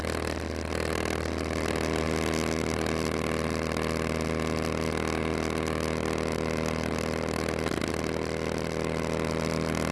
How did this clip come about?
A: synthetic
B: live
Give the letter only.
B